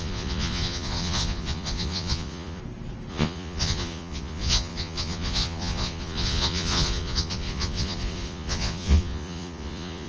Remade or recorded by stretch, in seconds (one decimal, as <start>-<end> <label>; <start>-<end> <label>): 0.0-2.6 remade; 2.6-3.1 recorded; 3.1-10.1 remade